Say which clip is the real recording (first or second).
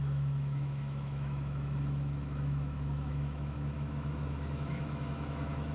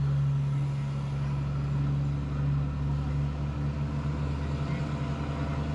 second